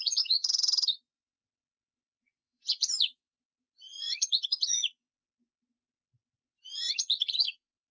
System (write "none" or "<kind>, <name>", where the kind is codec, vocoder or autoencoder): vocoder, Vocos